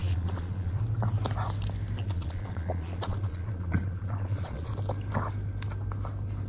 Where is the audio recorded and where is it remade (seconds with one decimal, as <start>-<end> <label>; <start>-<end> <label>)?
0.0-0.8 remade; 0.8-2.0 recorded; 2.0-4.7 remade; 4.7-6.5 recorded